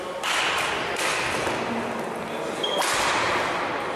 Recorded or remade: recorded